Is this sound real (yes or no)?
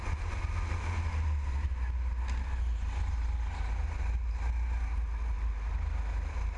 yes